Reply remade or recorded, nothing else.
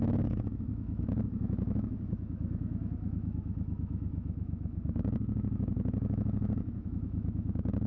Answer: remade